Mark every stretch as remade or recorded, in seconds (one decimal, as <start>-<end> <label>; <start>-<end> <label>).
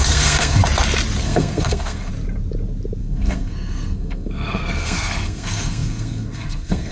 0.0-0.6 remade; 0.6-1.2 recorded; 1.2-2.1 remade; 2.1-3.0 recorded; 3.0-6.9 remade